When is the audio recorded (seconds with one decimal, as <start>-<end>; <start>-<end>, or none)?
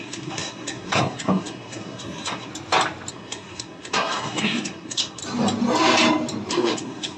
2.5-3.1; 5.2-6.5